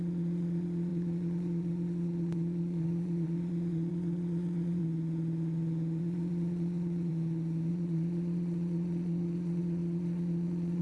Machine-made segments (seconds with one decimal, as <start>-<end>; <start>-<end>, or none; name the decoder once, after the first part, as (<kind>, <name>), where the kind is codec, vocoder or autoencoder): 0.0-4.8 (vocoder, Vocos); 6.0-7.1; 7.7-10.8